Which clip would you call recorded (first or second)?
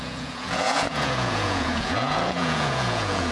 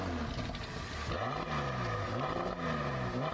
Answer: second